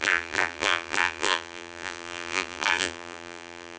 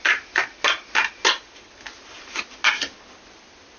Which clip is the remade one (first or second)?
first